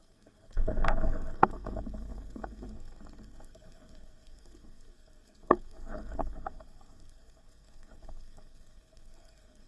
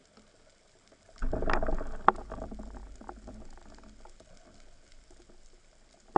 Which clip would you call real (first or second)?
second